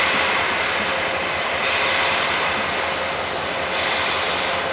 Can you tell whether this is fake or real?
fake